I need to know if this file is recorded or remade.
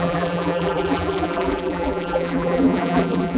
remade